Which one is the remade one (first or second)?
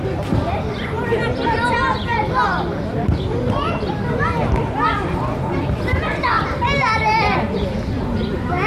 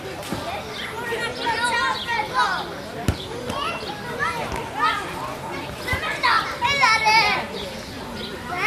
first